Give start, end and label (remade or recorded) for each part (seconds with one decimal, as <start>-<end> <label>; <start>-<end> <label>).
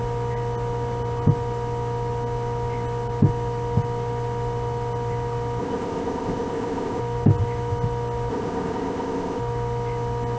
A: 0.0-5.6 recorded; 5.6-7.0 remade; 7.0-8.3 recorded; 8.3-9.4 remade; 9.4-10.4 recorded